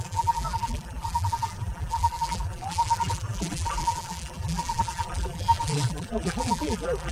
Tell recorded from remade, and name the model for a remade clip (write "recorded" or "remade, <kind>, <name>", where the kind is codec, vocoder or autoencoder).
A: remade, vocoder, BigVGAN v2